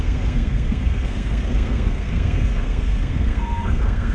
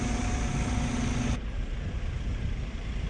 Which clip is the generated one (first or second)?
first